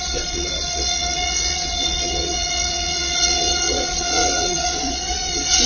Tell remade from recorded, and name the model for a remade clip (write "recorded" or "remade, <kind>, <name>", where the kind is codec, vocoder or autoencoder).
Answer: remade, vocoder, Vocos